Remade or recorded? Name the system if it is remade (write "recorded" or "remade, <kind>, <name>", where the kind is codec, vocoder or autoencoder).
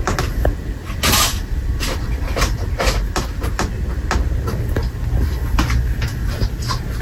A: recorded